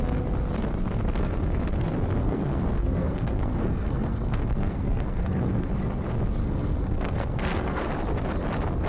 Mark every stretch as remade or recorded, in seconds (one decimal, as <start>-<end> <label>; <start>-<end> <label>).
0.0-2.2 recorded; 2.2-5.7 remade; 5.7-6.4 recorded; 6.4-7.9 remade; 7.9-8.9 recorded